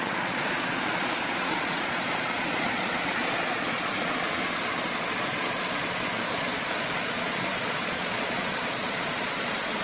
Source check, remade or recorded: remade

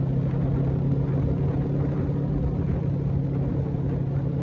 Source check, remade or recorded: recorded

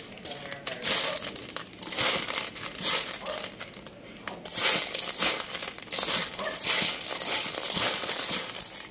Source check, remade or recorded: recorded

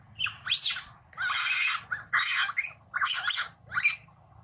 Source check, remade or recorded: recorded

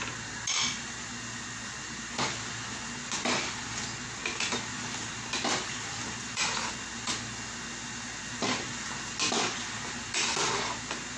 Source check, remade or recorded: recorded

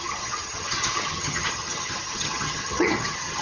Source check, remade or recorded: remade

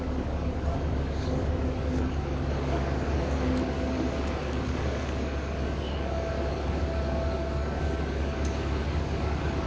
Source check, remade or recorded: remade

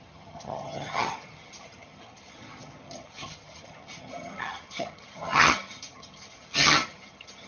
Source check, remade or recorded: remade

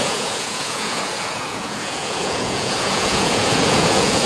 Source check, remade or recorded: remade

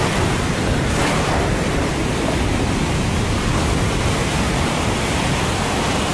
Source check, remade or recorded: recorded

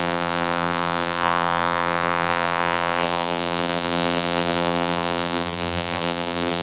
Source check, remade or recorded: remade